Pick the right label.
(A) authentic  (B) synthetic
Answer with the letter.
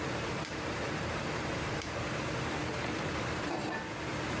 B